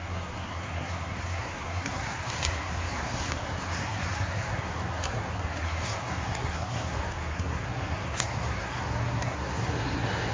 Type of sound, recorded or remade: remade